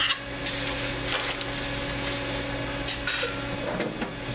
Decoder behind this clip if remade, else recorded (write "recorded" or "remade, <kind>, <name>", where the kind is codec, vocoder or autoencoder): recorded